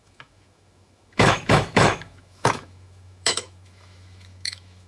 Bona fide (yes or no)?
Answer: no